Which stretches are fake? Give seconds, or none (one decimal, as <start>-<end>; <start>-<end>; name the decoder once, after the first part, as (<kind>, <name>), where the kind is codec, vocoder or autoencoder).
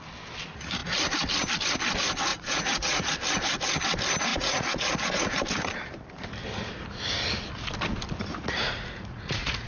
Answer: 2.3-3.1 (vocoder, Vocos); 4.3-5.1; 8.3-9.7